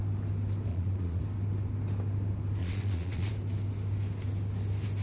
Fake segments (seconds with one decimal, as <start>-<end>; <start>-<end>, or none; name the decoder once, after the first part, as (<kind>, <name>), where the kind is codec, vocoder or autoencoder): 0.7-1.2 (vocoder, Vocos); 2.6-3.3